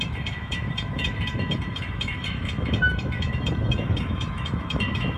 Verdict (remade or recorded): remade